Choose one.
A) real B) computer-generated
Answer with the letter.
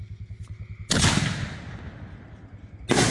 A